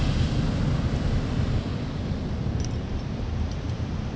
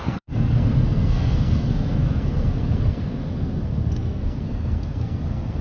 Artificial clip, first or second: second